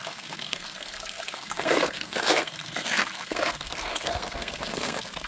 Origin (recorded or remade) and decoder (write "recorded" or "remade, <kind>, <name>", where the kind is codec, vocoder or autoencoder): remade, codec, SNAC